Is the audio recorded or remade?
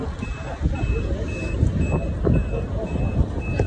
recorded